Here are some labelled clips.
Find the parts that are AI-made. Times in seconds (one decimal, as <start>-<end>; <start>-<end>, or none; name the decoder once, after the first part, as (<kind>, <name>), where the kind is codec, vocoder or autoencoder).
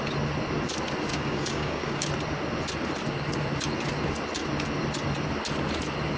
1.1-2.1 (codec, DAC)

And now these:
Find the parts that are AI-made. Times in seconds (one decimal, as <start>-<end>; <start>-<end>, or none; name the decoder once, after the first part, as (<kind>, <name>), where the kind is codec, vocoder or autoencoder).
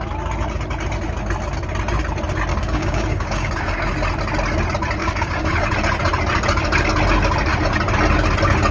2.5-3.9 (codec, DAC); 5.0-5.6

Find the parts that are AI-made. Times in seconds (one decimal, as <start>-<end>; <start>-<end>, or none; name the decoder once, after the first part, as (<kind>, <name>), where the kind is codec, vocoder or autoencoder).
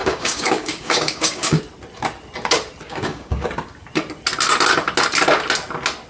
0.0-1.6 (codec, DAC); 2.8-3.5